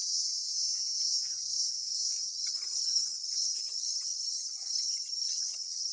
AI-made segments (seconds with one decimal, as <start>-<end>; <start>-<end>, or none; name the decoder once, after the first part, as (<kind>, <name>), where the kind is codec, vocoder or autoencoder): 2.3-5.9 (vocoder, HiFi-GAN)